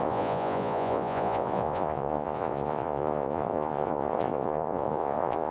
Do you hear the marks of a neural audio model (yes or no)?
yes